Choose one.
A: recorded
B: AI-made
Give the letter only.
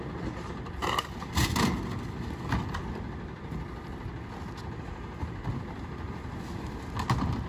A